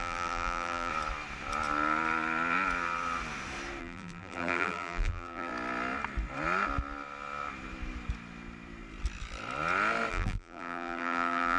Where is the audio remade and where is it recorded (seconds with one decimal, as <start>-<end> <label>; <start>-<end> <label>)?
0.0-0.9 remade; 0.9-3.8 recorded; 3.8-5.5 remade; 5.5-10.1 recorded; 10.1-11.6 remade